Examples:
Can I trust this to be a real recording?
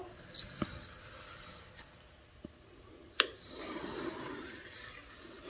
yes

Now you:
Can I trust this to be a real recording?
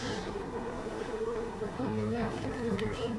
no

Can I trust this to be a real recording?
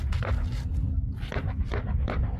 yes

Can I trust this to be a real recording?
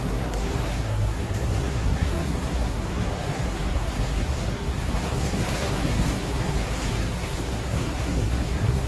no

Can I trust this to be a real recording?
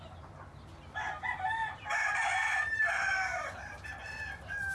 yes